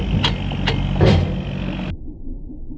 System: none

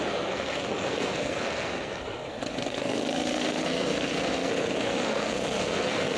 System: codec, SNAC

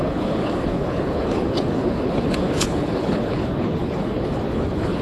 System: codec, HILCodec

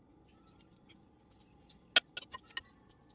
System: none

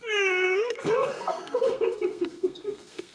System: codec, SNAC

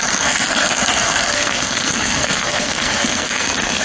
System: codec, SNAC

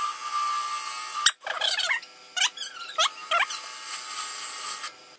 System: none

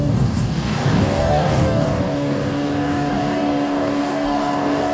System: codec, DAC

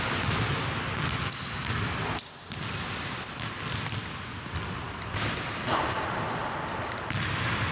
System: none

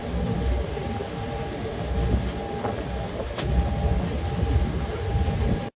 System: none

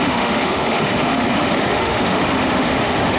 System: autoencoder, DAC-VAE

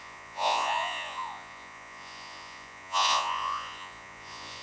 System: vocoder, Vocos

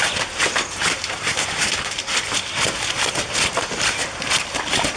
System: none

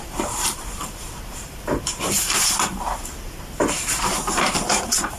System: vocoder, BigVGAN v2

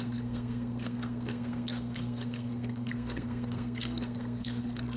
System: codec, SNAC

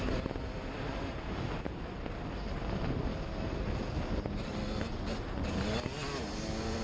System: none